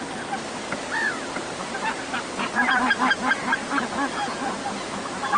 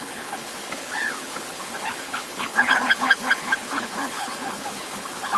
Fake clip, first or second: second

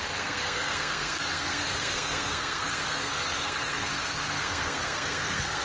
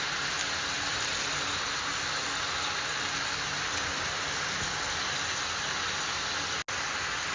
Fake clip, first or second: first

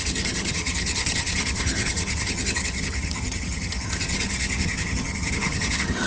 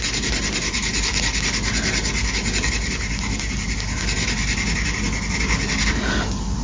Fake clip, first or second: first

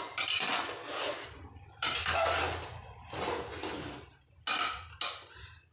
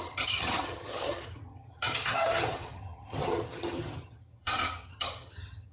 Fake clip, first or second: second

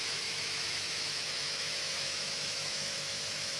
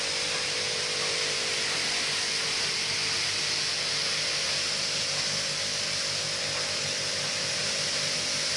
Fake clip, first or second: first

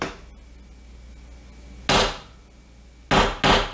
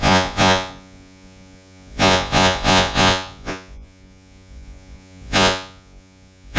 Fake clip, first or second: second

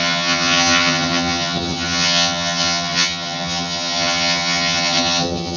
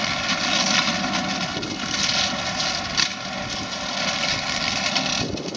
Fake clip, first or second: first